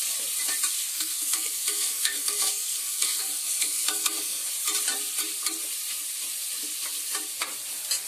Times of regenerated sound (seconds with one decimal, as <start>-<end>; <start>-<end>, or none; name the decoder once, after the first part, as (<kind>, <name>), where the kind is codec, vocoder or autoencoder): 0.9-4.5 (codec, SNAC)